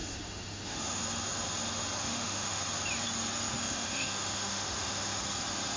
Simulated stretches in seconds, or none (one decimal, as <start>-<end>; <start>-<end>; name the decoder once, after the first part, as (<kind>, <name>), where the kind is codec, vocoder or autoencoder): 0.0-1.0 (autoencoder, DAC-VAE); 2.0-2.6; 3.6-5.2